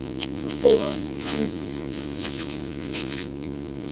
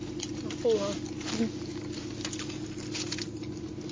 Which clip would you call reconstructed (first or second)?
first